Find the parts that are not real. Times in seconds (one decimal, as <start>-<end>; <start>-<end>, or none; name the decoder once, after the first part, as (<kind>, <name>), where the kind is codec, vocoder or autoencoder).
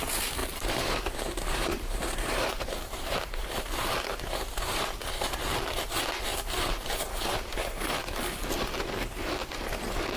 0.4-5.6 (vocoder, BigVGAN v2); 6.3-7.8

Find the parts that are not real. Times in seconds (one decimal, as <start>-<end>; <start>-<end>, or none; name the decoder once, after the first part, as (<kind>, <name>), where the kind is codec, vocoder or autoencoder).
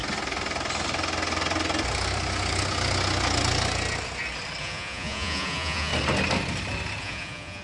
4.6-5.9 (vocoder, Vocos); 7.0-7.6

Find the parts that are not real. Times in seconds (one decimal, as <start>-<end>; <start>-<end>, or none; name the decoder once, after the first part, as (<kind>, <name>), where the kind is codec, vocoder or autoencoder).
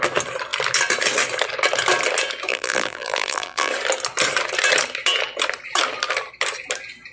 2.5-3.7 (vocoder, BigVGAN v2)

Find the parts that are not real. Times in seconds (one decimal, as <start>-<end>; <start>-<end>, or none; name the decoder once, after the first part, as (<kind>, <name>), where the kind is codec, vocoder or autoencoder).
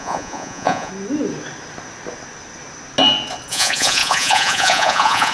0.0-0.9 (vocoder, Vocos); 3.5-5.3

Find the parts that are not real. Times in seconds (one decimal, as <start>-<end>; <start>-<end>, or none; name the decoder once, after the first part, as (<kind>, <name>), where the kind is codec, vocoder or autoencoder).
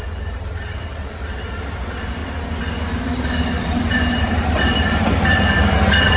0.0-2.2 (vocoder, BigVGAN v2); 2.9-6.2